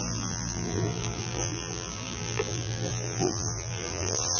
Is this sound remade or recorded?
remade